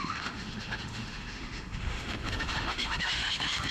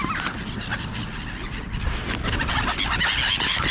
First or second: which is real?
second